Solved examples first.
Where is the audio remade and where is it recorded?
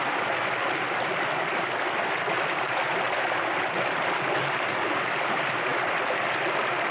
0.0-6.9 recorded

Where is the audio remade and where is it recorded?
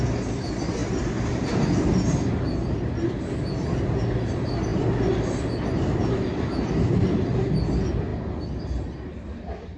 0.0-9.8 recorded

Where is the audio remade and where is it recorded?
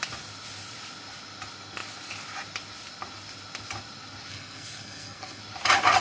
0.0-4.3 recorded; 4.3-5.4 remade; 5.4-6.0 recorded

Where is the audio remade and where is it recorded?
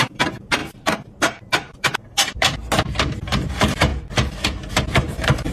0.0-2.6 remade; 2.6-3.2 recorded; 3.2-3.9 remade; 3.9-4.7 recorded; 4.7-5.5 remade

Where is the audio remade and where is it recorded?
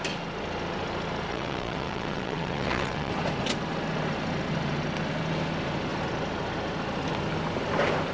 0.0-1.3 recorded; 1.3-3.1 remade; 3.1-8.1 recorded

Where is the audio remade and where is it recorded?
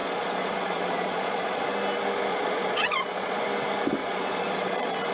0.0-1.7 remade; 1.7-2.3 recorded; 2.3-3.4 remade; 3.4-4.0 recorded; 4.0-5.1 remade